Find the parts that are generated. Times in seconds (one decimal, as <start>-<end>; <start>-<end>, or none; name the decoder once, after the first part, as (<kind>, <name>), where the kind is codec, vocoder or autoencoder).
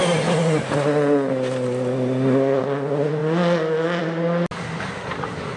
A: none